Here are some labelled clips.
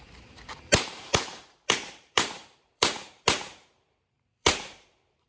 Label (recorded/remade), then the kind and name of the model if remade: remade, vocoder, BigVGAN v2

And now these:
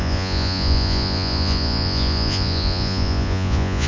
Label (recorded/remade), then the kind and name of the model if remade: remade, vocoder, Vocos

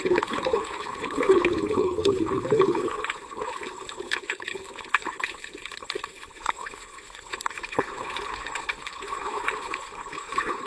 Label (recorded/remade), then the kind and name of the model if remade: remade, codec, HILCodec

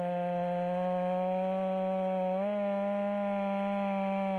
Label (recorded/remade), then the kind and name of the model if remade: recorded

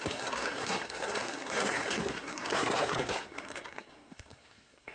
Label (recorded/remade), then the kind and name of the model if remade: remade, codec, SNAC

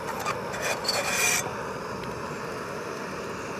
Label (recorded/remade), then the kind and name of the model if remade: recorded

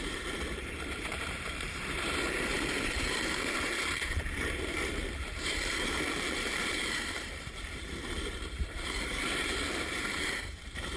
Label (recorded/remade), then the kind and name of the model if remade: remade, vocoder, BigVGAN v2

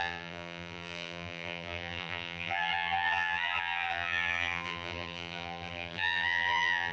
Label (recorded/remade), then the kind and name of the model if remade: remade, vocoder, BigVGAN v2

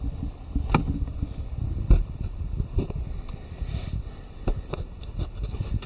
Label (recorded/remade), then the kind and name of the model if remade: recorded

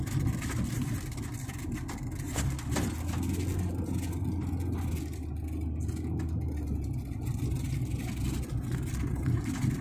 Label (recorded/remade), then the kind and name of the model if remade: recorded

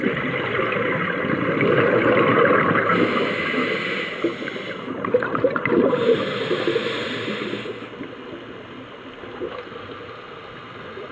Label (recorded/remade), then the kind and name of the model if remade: recorded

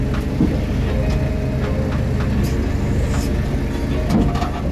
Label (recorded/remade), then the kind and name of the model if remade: recorded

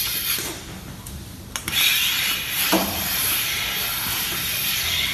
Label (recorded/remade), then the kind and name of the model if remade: remade, vocoder, BigVGAN v2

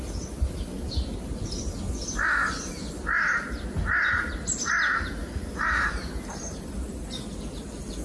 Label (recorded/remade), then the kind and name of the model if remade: recorded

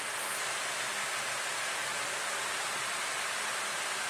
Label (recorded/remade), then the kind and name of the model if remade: recorded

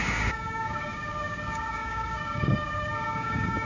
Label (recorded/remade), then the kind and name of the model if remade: remade, codec, DAC